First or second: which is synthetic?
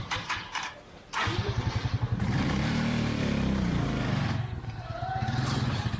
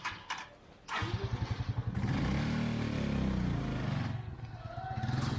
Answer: first